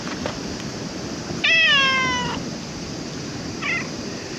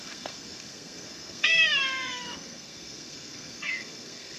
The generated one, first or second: second